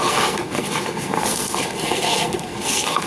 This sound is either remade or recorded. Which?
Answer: remade